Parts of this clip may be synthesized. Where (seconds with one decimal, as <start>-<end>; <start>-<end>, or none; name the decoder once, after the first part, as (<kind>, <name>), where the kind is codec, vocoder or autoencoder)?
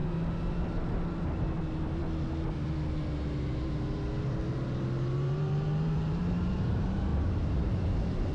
4.5-8.3 (vocoder, BigVGAN v2)